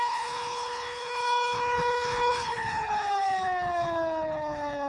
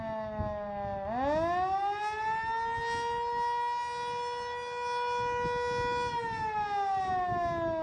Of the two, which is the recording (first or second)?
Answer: second